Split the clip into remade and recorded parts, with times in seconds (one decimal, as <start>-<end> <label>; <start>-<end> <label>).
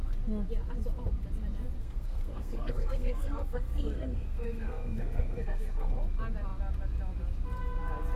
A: 0.0-1.8 recorded; 1.8-5.9 remade; 5.9-8.2 recorded